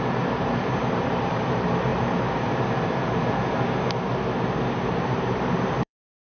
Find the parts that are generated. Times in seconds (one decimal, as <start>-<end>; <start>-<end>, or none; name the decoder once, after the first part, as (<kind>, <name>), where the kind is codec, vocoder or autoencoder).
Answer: 0.0-4.1 (vocoder, BigVGAN v2); 4.9-6.3